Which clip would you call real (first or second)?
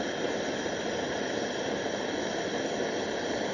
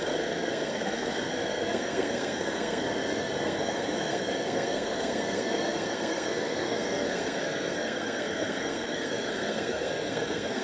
first